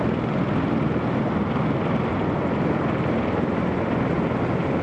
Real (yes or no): yes